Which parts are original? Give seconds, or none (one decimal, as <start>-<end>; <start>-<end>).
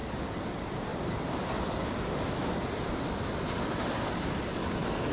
0.0-0.5; 0.9-3.6; 4.5-5.1